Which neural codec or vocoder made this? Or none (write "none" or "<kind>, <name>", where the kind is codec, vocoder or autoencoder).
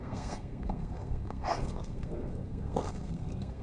codec, SNAC